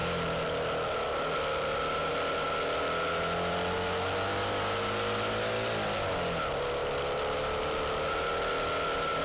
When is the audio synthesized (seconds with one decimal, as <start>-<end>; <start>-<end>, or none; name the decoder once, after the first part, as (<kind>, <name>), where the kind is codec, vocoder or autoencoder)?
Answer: none